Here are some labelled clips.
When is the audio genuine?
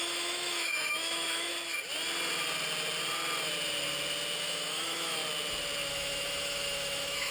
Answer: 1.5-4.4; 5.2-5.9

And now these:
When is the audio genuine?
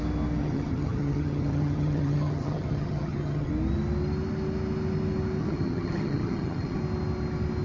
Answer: 0.0-0.4; 3.5-5.4; 6.8-7.6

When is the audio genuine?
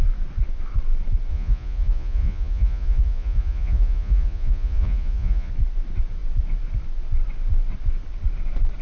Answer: 0.0-1.3; 5.5-8.8